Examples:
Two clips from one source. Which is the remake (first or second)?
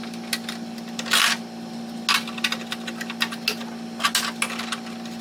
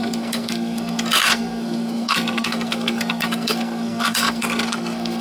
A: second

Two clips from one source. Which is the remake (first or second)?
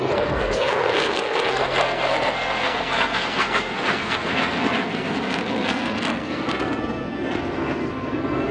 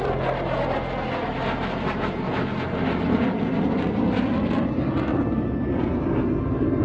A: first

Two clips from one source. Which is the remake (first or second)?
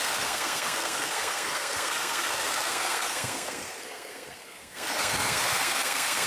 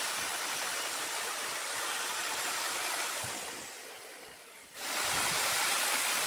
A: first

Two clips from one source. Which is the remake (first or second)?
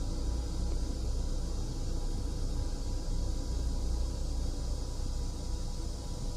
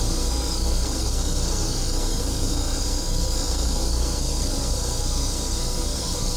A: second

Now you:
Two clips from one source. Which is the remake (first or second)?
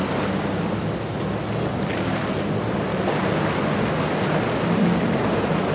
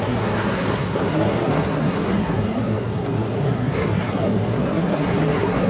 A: second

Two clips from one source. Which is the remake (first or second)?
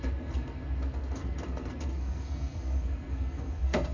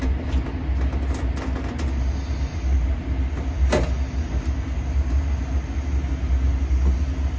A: first